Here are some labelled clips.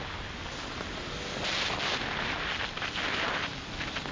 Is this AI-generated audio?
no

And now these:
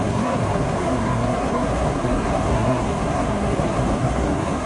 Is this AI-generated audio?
yes